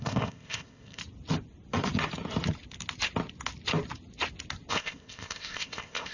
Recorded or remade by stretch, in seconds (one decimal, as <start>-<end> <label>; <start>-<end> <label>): 0.0-1.0 remade; 1.0-4.7 recorded; 4.7-6.1 remade